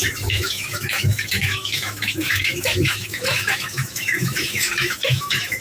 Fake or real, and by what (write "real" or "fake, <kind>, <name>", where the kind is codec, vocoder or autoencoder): fake, autoencoder, DAC-VAE